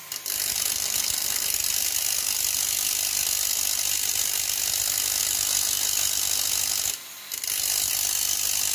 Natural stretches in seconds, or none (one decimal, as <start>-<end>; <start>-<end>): 0.0-8.7